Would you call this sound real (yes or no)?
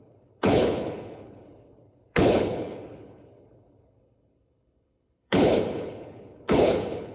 no